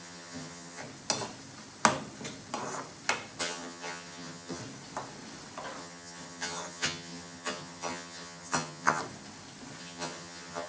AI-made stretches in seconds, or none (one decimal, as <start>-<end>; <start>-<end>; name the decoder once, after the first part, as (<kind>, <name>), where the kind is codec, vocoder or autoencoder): 0.0-0.8 (vocoder, HiFi-GAN); 3.4-4.6; 5.8-9.0; 9.8-10.7